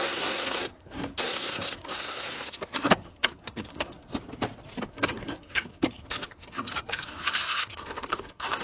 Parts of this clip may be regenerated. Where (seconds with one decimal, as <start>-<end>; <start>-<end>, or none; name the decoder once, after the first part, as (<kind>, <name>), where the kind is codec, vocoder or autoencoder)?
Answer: 0.0-4.1 (codec, SNAC); 4.9-8.6